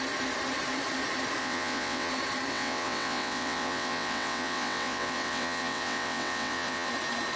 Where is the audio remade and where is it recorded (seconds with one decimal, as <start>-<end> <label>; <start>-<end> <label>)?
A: 0.0-1.4 recorded; 1.4-2.1 remade; 2.1-2.5 recorded; 2.5-6.9 remade; 6.9-7.4 recorded